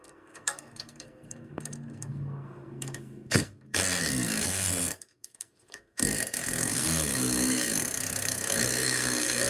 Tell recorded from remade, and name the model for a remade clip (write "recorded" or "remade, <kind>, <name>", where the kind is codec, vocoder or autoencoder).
remade, codec, SNAC